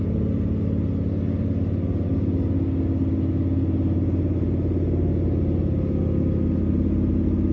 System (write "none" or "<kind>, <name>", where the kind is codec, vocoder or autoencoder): none